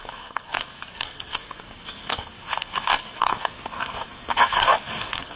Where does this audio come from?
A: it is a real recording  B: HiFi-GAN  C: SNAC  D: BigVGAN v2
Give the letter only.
C